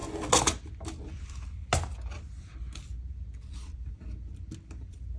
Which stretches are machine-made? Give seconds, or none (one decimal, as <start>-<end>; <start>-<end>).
none